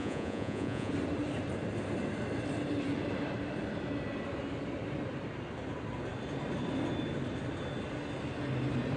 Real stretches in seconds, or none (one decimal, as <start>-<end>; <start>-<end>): 0.9-9.0